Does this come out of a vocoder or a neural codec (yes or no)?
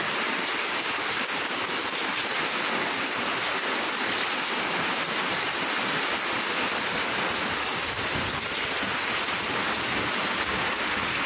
no